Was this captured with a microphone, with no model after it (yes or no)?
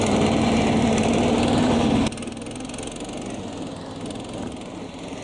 yes